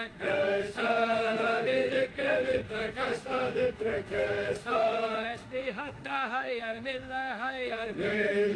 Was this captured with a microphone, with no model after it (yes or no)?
no